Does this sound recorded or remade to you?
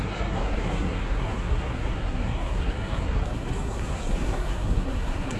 remade